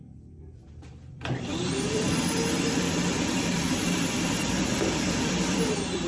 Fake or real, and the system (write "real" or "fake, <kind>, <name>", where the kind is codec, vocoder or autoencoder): fake, vocoder, BigVGAN v2